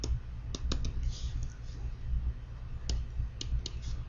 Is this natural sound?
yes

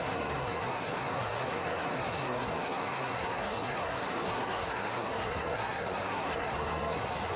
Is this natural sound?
no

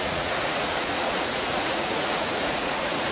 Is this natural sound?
no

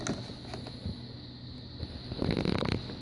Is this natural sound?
yes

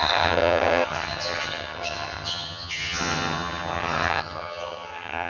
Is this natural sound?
no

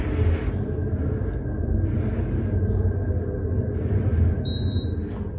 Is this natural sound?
yes